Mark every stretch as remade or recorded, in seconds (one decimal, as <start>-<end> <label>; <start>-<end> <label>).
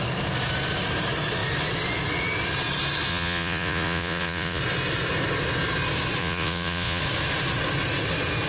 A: 0.0-3.1 recorded; 3.1-4.6 remade; 4.6-6.2 recorded; 6.2-7.0 remade; 7.0-8.5 recorded